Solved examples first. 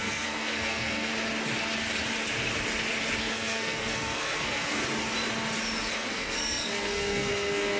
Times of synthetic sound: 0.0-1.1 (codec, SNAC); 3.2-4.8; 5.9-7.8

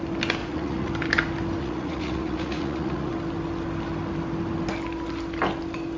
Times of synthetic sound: 0.4-0.9 (vocoder, Vocos); 1.6-3.1

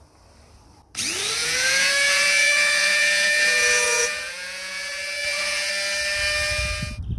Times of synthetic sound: 1.4-5.7 (vocoder, Vocos)

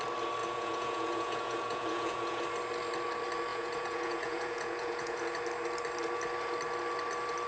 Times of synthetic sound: 0.4-2.4 (vocoder, Vocos); 3.5-5.2

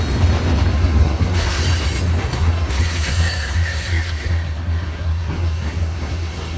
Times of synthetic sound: 0.7-1.6 (codec, SNAC); 2.2-6.6

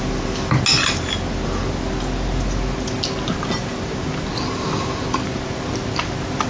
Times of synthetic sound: none